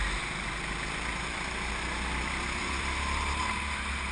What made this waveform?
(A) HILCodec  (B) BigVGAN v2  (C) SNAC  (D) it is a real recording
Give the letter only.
D